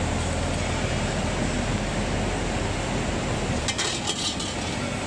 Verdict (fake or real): real